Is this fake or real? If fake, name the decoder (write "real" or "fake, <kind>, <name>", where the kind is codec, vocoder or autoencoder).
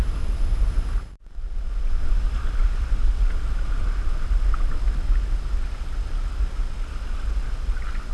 real